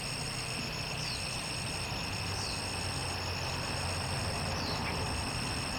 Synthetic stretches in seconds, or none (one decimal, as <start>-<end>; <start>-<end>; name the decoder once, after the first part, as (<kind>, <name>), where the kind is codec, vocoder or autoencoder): none